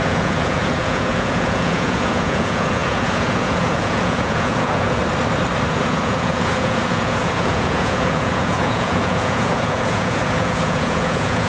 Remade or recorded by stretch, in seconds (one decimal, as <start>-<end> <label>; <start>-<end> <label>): 0.0-5.0 remade; 5.0-5.7 recorded; 5.7-11.5 remade